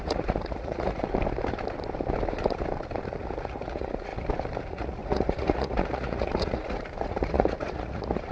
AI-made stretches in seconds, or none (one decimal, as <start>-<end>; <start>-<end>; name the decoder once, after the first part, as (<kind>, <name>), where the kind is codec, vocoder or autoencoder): 0.0-1.0 (vocoder, Vocos); 3.1-4.1; 4.6-8.3